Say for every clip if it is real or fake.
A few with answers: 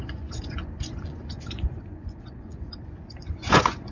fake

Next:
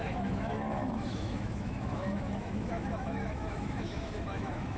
fake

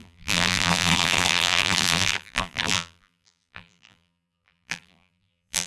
fake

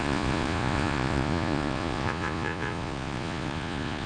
fake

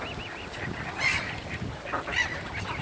real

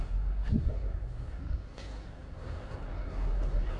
fake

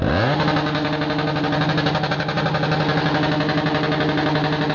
real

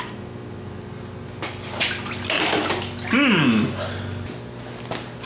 real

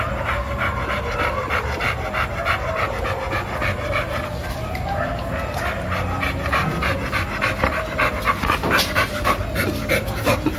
real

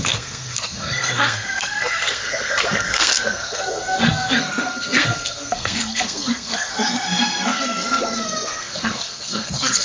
fake